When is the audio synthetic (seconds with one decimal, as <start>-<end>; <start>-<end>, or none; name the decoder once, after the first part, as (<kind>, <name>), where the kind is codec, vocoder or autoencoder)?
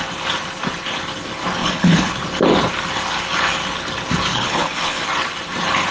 1.6-2.1 (codec, HILCodec); 4.3-5.0